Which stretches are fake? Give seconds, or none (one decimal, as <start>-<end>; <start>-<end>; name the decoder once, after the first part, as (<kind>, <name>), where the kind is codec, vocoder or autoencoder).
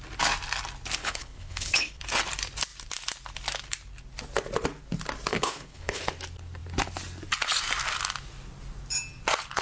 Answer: 1.0-2.0 (codec, HILCodec); 5.3-6.0